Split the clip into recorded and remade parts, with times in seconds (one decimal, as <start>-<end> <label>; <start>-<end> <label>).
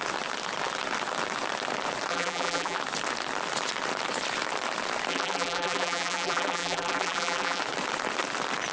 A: 0.0-2.1 recorded; 2.1-2.8 remade; 2.8-5.1 recorded; 5.1-7.6 remade; 7.6-8.7 recorded